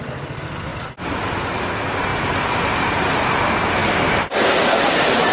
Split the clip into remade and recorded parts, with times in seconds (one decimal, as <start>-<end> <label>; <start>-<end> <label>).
0.0-3.8 remade; 3.8-4.8 recorded; 4.8-5.3 remade